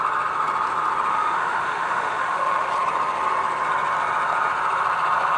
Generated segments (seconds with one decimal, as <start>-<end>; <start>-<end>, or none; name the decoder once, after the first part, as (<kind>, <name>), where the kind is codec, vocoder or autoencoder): 1.1-2.7 (autoencoder, DAC-VAE)